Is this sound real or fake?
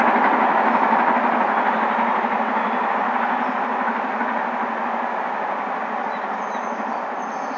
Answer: real